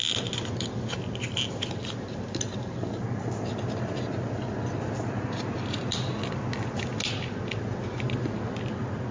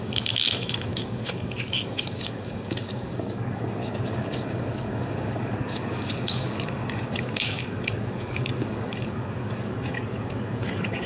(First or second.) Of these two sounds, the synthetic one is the second